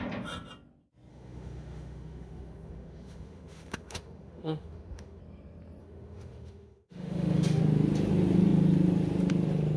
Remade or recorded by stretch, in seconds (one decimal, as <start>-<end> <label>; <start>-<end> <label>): 0.0-1.1 recorded; 1.1-5.2 remade; 5.2-5.8 recorded; 5.8-7.6 remade; 7.6-9.8 recorded